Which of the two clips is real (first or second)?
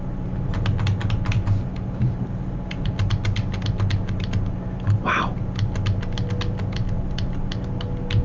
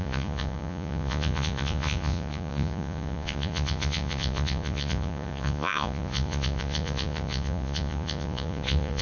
first